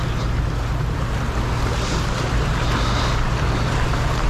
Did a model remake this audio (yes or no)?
no